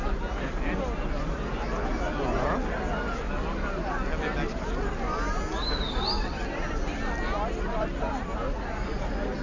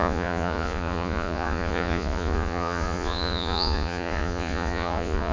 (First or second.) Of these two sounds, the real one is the first